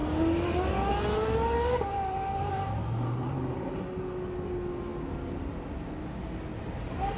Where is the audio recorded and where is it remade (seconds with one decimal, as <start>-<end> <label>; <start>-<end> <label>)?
0.0-1.9 recorded; 1.9-3.8 remade; 3.8-6.5 recorded; 6.5-7.2 remade